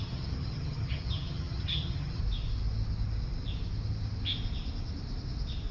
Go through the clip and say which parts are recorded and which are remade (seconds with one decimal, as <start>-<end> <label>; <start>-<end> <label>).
0.0-2.2 remade; 2.2-5.7 recorded